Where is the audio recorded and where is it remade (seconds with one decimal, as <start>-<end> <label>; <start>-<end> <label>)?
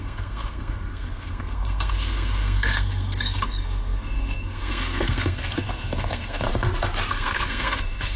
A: 0.0-6.5 remade; 6.5-7.1 recorded; 7.1-8.2 remade